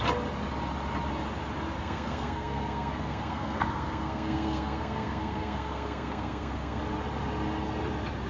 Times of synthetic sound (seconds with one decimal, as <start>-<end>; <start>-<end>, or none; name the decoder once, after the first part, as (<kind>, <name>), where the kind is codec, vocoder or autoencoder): 1.8-6.8 (codec, SNAC)